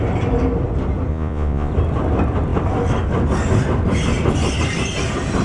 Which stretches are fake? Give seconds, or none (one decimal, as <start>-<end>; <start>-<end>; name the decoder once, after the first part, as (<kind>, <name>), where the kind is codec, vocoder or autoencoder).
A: 1.1-1.7 (vocoder, Vocos)